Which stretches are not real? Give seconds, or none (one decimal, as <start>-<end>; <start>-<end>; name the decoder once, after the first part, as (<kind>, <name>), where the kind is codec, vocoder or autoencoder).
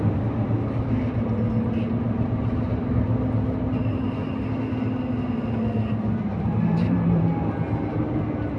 6.3-7.2 (vocoder, BigVGAN v2)